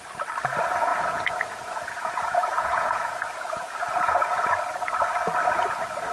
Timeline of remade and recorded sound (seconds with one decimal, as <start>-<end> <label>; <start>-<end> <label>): 0.0-0.9 recorded; 0.9-4.6 remade; 4.6-6.1 recorded

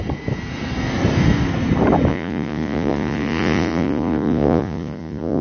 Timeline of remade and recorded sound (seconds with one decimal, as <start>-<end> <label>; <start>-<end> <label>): 0.0-2.1 recorded; 2.1-5.4 remade

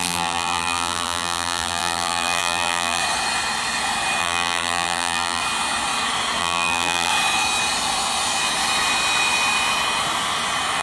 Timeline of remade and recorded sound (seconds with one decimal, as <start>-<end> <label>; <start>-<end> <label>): 0.0-3.0 remade; 3.0-4.2 recorded; 4.2-5.4 remade; 5.4-6.4 recorded; 6.4-7.1 remade; 7.1-10.8 recorded

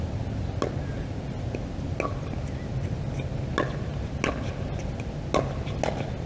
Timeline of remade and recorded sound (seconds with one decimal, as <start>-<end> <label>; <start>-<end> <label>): 0.0-2.7 recorded; 2.7-3.5 remade; 3.5-6.3 recorded

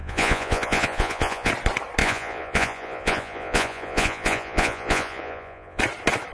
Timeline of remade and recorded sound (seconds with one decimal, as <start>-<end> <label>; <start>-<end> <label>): 0.0-1.5 remade; 1.5-2.0 recorded; 2.0-5.8 remade; 5.8-6.3 recorded

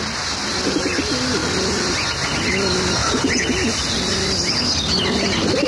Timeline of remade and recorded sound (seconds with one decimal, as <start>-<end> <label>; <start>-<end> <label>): 0.0-1.4 recorded; 1.4-1.9 remade; 1.9-3.0 recorded; 3.0-4.6 remade; 4.6-5.7 recorded

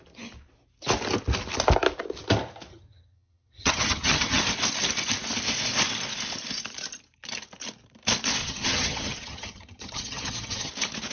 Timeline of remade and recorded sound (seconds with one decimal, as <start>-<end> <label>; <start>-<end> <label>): 0.0-2.7 recorded; 2.7-4.4 remade; 4.4-8.4 recorded; 8.4-10.7 remade; 10.7-11.1 recorded